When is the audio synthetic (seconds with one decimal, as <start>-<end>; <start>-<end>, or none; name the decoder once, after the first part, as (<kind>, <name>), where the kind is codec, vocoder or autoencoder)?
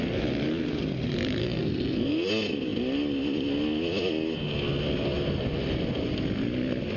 1.4-2.3 (codec, SNAC)